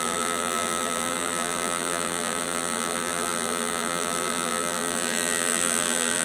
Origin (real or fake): fake